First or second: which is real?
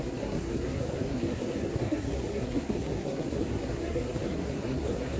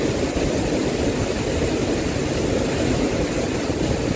second